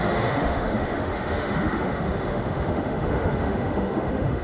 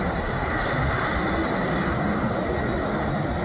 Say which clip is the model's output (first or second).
first